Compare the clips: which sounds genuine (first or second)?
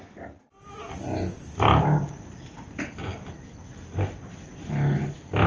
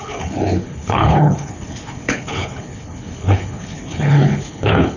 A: first